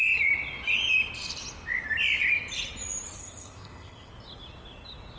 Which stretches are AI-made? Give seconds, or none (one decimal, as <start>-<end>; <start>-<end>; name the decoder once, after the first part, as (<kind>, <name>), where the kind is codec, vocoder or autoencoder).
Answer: 3.2-4.1 (codec, ZipCodec)